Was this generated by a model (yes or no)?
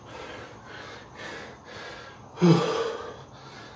no